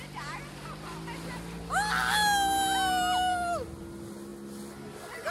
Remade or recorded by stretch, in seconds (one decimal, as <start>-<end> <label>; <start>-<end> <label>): 0.0-5.3 recorded